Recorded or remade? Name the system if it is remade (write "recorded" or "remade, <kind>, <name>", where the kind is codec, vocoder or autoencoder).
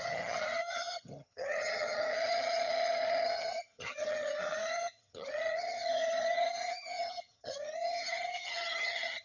remade, vocoder, HiFi-GAN